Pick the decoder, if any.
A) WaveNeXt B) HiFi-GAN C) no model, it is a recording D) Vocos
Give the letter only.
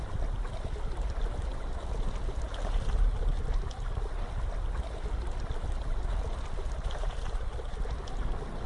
C